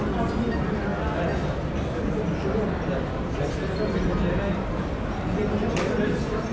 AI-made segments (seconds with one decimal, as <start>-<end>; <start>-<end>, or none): none